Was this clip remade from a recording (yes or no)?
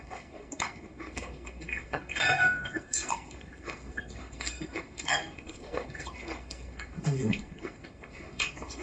yes